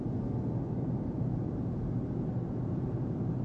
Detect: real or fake real